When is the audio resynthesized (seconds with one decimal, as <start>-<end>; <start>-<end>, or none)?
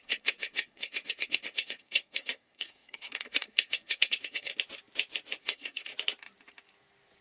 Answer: 0.0-4.5; 5.4-5.9